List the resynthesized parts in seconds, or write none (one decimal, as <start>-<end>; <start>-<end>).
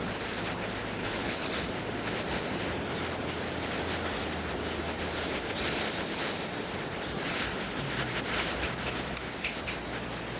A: 1.0-1.5